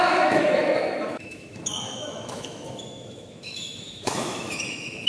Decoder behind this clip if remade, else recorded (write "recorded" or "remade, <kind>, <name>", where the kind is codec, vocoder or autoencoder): remade, autoencoder, DAC-VAE